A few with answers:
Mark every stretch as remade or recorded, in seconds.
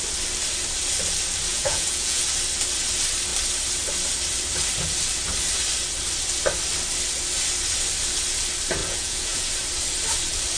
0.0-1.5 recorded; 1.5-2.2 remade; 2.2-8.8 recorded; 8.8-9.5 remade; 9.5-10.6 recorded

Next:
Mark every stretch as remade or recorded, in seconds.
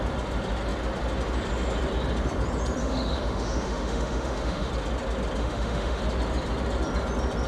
0.0-2.8 recorded; 2.8-4.7 remade; 4.7-5.4 recorded; 5.4-6.0 remade; 6.0-7.5 recorded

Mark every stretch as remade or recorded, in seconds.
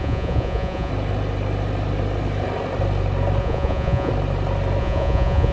0.0-0.9 remade; 0.9-3.4 recorded; 3.4-4.1 remade; 4.1-4.8 recorded; 4.8-5.5 remade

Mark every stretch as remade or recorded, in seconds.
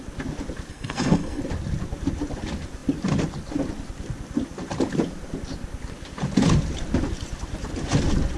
0.0-0.7 recorded; 0.7-1.4 remade; 1.4-8.4 recorded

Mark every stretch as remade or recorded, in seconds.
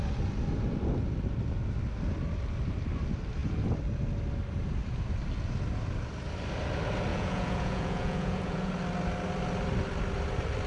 0.0-7.1 recorded; 7.1-8.7 remade; 8.7-10.7 recorded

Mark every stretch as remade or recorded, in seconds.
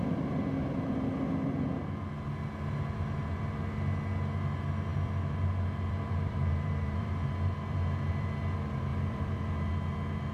0.0-4.9 recorded; 4.9-8.4 remade; 8.4-8.9 recorded; 8.9-9.7 remade; 9.7-10.3 recorded